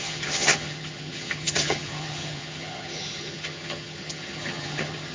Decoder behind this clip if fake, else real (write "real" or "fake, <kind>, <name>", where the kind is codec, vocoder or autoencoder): fake, vocoder, HiFi-GAN